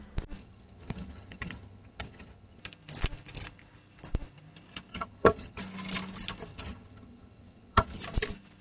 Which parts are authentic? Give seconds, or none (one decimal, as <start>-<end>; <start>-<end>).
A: 0.0-0.4; 2.6-4.9; 5.6-6.5; 8.0-8.6

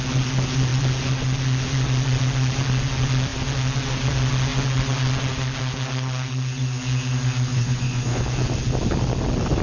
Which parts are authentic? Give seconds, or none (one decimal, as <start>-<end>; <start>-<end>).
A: 0.0-7.5; 8.2-9.6